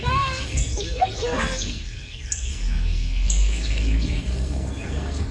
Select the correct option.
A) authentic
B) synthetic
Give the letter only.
B